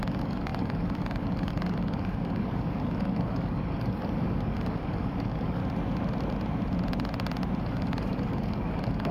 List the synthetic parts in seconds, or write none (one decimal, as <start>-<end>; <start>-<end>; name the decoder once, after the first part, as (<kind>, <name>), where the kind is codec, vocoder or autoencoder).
0.0-5.6 (codec, DAC); 7.6-9.1